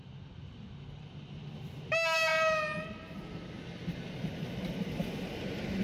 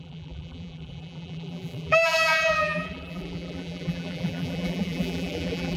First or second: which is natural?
first